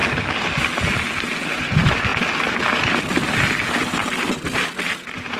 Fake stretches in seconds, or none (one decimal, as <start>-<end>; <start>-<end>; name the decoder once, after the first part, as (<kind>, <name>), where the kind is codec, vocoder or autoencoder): none